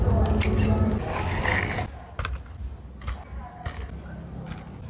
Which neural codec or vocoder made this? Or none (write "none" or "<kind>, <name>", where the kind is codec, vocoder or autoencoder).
none